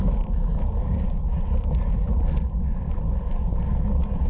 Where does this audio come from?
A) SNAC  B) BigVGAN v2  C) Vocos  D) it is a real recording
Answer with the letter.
D